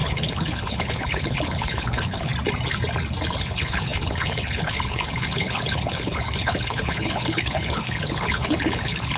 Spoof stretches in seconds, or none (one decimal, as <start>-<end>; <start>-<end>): 0.0-2.3; 3.3-9.2